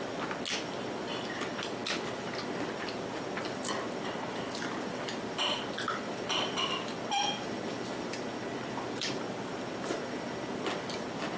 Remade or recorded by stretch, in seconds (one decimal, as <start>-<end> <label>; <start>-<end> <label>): 0.0-11.4 recorded